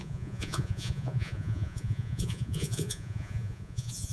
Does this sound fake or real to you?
fake